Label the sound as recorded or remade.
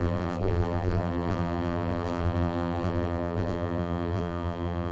remade